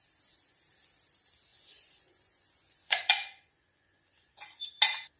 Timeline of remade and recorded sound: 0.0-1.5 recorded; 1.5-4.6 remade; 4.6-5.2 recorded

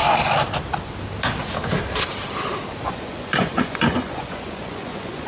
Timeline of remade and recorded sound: 0.0-2.9 recorded; 2.9-5.3 remade

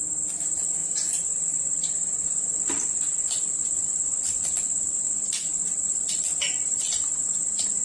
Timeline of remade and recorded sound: 0.0-5.9 recorded; 5.9-6.9 remade; 6.9-7.8 recorded

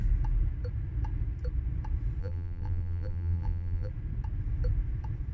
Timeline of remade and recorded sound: 0.0-2.2 recorded; 2.2-3.9 remade; 3.9-5.3 recorded

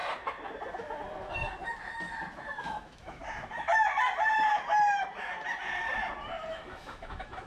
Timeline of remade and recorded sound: 0.0-2.6 recorded; 2.6-3.2 remade; 3.2-6.5 recorded; 6.5-7.5 remade

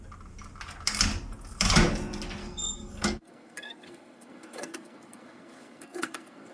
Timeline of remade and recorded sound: 0.0-2.4 recorded; 2.4-6.5 remade